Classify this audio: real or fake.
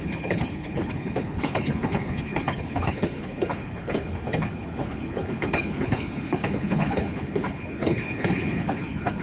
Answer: fake